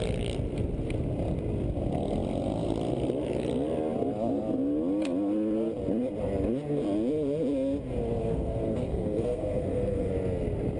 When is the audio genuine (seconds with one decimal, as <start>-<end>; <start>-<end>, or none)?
0.0-8.2; 10.1-10.8